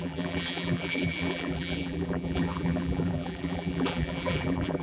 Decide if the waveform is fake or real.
fake